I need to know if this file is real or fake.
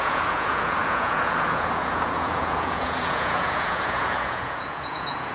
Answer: fake